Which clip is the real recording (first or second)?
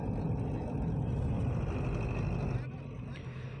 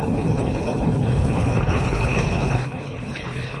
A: first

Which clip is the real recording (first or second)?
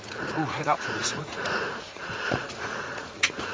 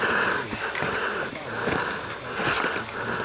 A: second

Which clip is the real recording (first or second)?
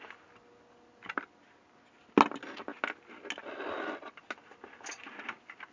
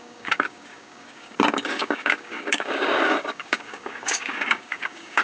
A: first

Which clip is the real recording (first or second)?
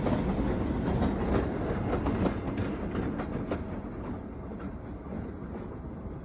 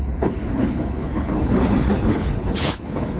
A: first